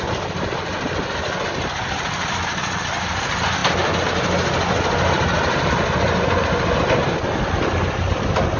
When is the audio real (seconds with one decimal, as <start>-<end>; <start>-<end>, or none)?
0.0-8.6